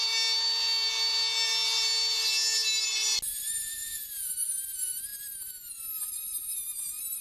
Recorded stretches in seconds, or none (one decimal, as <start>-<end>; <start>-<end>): 0.0-3.8; 4.3-7.2